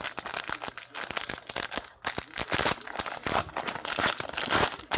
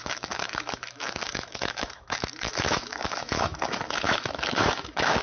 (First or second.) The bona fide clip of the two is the first